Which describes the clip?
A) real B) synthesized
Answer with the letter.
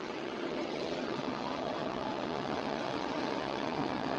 B